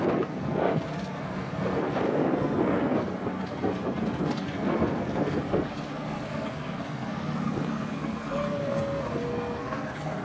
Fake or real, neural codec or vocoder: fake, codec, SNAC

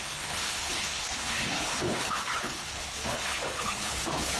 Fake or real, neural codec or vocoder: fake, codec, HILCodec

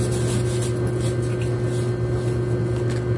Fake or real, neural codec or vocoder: real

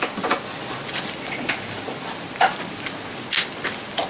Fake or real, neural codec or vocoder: real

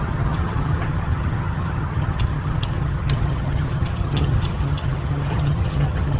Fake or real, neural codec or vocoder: fake, vocoder, HiFi-GAN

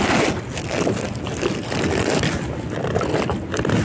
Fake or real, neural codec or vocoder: real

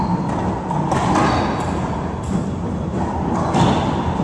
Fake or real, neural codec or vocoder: real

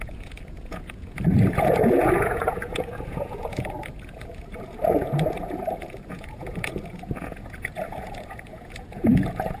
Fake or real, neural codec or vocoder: fake, vocoder, Vocos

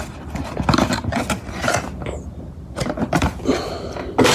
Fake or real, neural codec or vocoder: real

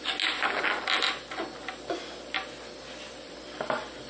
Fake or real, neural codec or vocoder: real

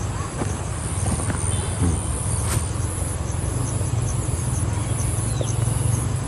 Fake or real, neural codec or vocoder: real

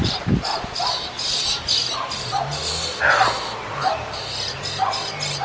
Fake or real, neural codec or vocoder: real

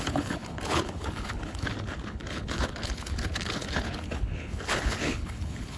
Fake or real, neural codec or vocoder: fake, codec, HILCodec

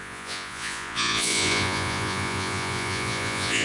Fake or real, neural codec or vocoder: fake, vocoder, Vocos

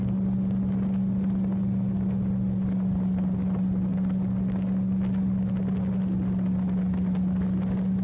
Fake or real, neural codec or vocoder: real